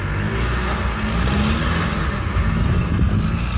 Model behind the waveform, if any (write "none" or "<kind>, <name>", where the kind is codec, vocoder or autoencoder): none